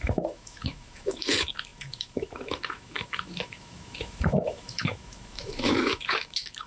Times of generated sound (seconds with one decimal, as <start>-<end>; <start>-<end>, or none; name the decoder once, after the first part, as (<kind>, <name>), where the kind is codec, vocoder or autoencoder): 0.0-6.7 (autoencoder, DAC-VAE)